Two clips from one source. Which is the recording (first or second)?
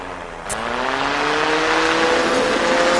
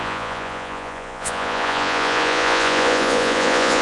first